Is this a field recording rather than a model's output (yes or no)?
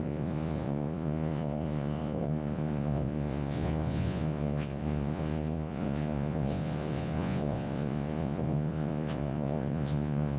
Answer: no